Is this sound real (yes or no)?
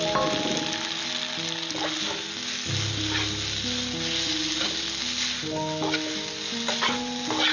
yes